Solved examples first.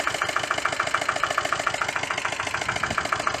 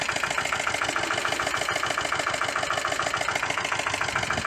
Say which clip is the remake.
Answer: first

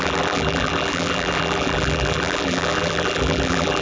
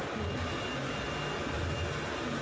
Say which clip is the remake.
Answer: first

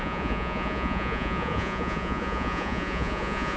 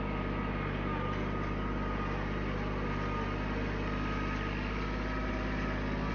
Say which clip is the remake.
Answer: first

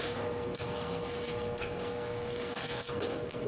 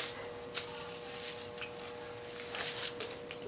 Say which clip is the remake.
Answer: first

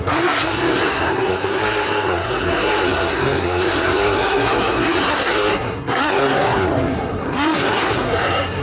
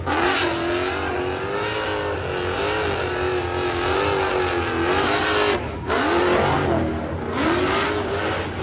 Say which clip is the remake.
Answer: first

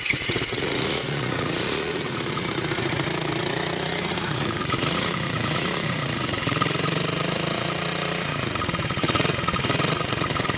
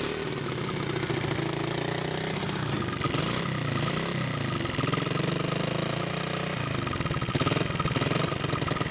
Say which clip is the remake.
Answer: first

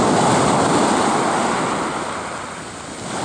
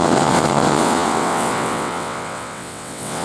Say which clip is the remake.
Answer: second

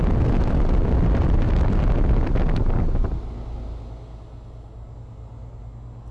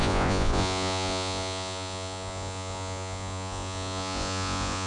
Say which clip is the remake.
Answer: second